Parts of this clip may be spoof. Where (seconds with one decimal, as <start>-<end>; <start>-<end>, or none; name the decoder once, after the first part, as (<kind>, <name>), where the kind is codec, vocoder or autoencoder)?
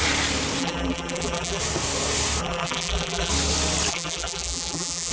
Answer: 0.6-1.6 (vocoder, BigVGAN v2); 2.4-3.3; 3.9-5.1